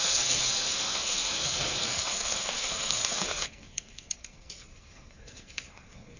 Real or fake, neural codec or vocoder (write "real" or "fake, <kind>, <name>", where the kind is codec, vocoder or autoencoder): fake, codec, SNAC